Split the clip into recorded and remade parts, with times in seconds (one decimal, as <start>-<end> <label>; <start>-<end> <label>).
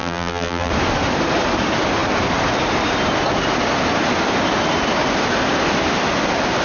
0.0-0.7 remade; 0.7-6.6 recorded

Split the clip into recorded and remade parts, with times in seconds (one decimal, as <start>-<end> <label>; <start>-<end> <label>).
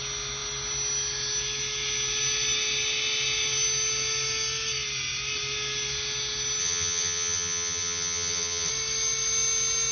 0.0-6.6 recorded; 6.6-8.7 remade; 8.7-9.9 recorded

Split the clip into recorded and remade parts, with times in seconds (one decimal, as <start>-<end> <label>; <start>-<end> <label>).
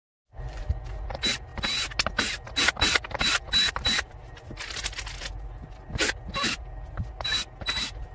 0.0-0.6 remade; 0.6-8.1 recorded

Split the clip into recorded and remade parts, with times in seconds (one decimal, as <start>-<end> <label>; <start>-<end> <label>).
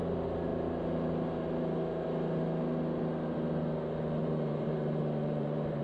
0.0-4.2 recorded; 4.2-5.8 remade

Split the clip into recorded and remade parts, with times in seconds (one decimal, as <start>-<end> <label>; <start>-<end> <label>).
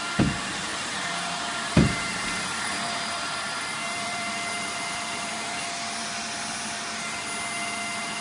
0.0-0.7 recorded; 0.7-5.6 remade; 5.6-8.2 recorded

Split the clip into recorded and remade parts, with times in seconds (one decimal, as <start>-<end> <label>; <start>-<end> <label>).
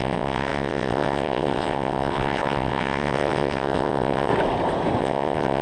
0.0-4.3 remade; 4.3-5.0 recorded; 5.0-5.6 remade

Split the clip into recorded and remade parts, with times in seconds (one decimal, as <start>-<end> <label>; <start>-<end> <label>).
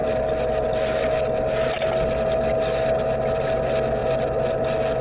0.0-5.0 recorded